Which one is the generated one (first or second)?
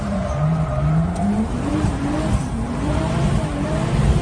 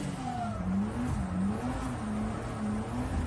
first